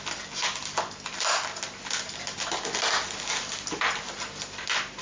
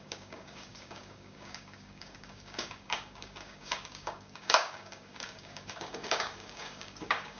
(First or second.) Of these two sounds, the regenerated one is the second